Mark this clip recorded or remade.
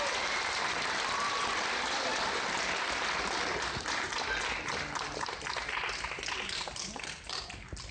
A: recorded